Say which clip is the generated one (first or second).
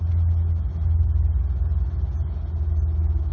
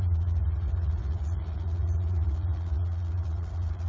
second